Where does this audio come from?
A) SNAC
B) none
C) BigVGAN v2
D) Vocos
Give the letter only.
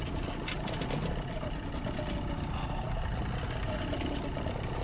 B